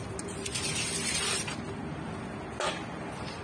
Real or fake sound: fake